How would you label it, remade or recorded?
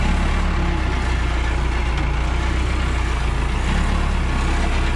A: recorded